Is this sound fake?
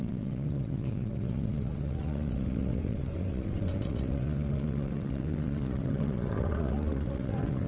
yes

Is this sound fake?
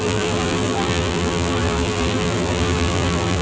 yes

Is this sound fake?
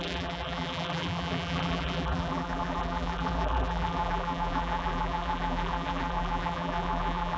yes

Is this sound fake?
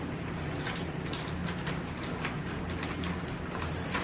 no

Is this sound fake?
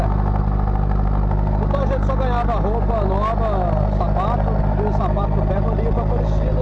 no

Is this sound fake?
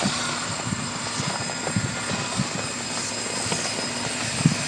no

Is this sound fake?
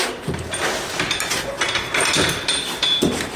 no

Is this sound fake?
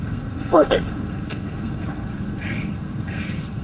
yes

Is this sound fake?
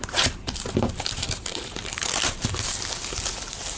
yes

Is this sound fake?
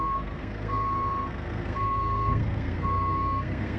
yes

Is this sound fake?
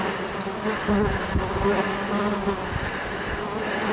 no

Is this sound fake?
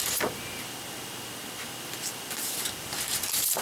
no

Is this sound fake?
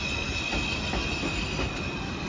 no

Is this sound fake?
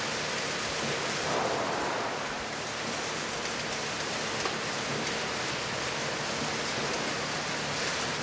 no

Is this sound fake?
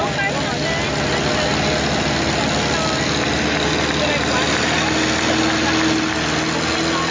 no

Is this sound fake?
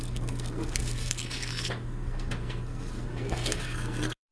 yes